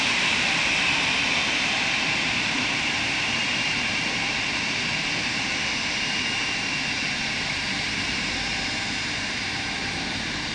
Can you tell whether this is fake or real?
fake